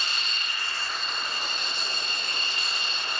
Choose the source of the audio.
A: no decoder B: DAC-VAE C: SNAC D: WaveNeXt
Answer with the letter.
A